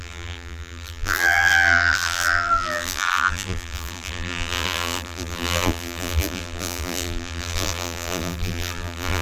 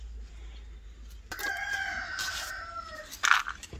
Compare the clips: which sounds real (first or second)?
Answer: second